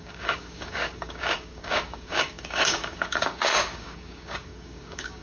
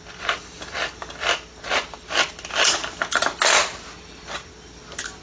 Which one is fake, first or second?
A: first